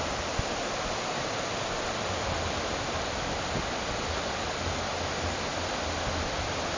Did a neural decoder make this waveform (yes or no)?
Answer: no